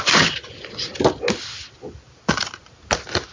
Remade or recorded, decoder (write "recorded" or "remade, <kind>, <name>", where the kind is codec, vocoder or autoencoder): recorded